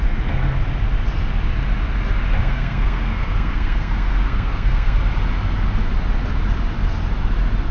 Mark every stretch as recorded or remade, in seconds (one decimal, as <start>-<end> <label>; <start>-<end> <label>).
0.0-2.4 recorded; 2.4-5.0 remade; 5.0-7.7 recorded